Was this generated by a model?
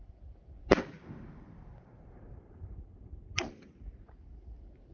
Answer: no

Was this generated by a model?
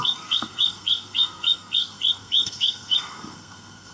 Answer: yes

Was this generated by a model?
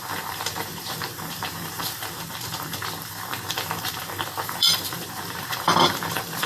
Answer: yes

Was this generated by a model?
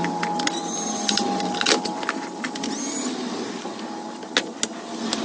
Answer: no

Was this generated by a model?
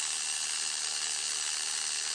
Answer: yes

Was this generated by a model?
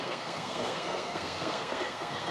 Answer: yes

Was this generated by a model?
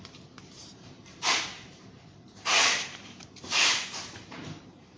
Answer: yes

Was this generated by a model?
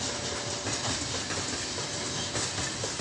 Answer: no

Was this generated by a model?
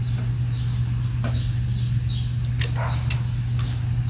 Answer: no